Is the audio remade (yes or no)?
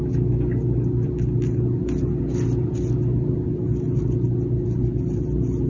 no